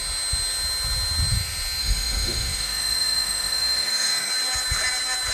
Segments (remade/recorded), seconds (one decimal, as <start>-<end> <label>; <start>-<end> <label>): 0.0-1.8 recorded; 1.8-4.3 remade; 4.3-5.3 recorded